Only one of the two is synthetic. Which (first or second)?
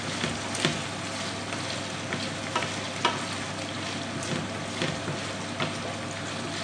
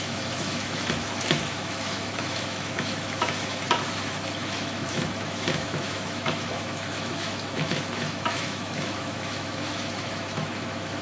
second